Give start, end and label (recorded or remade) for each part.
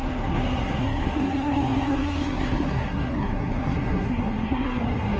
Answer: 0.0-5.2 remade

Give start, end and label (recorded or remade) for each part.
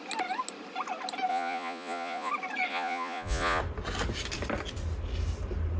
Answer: 0.0-1.3 recorded; 1.3-2.3 remade; 2.3-2.7 recorded; 2.7-3.6 remade; 3.6-5.8 recorded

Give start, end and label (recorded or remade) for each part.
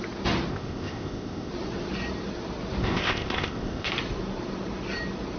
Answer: 0.0-0.5 recorded; 0.5-1.5 remade; 1.5-2.8 recorded; 2.8-3.9 remade; 3.9-5.4 recorded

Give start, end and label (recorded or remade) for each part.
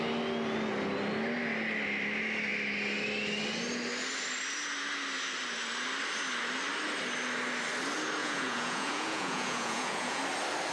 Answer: 0.0-8.2 recorded; 8.2-10.2 remade; 10.2-10.7 recorded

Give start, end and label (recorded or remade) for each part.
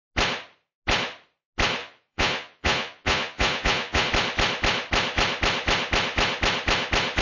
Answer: 0.0-1.8 recorded; 1.8-4.1 remade; 4.1-7.2 recorded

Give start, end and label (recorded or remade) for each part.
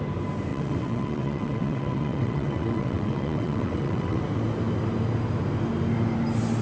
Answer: 0.0-0.5 recorded; 0.5-4.2 remade; 4.2-6.6 recorded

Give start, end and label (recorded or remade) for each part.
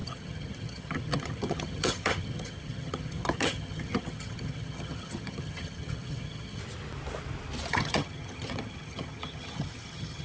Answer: 0.0-6.6 remade; 6.6-7.7 recorded; 7.7-10.2 remade